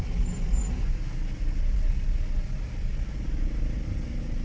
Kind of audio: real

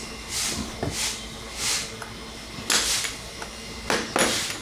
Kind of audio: real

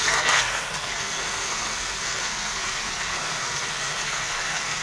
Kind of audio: fake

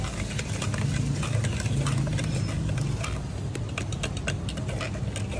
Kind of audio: real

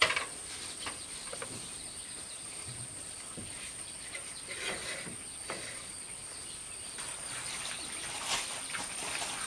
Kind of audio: real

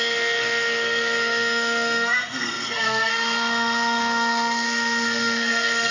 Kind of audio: fake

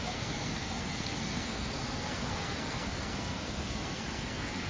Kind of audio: fake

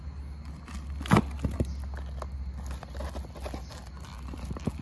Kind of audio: real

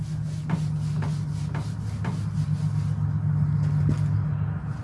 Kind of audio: real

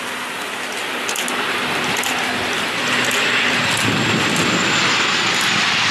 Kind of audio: real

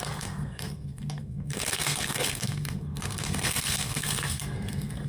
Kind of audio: fake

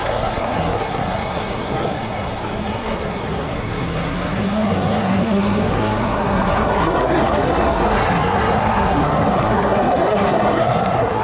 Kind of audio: fake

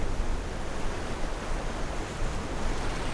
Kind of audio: real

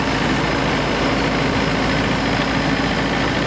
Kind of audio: real